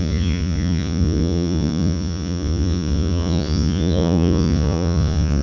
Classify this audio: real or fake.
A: fake